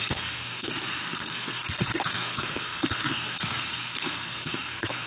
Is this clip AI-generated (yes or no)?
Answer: yes